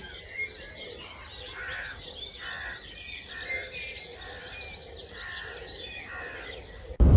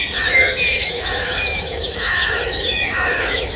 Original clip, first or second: first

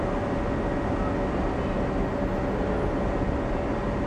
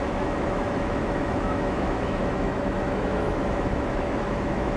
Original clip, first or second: first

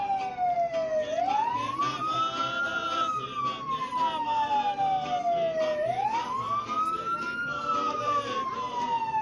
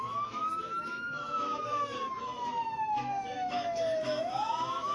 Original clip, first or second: first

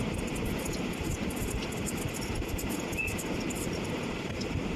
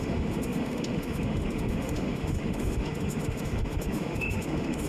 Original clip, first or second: first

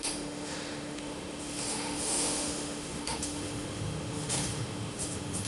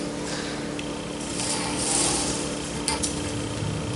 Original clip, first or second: second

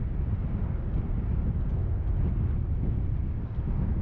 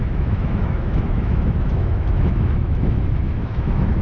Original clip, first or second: first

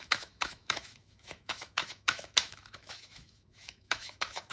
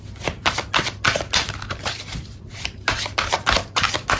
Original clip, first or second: second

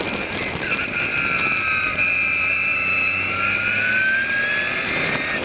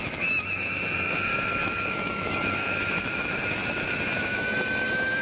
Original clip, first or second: first